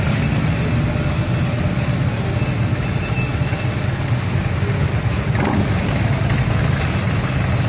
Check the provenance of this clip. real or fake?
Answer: real